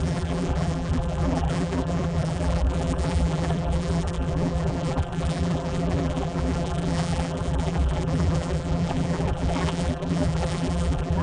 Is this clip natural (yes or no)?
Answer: no